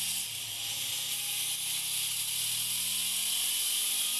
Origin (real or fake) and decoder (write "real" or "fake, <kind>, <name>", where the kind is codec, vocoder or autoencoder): real